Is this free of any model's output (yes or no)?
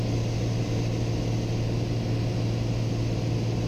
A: yes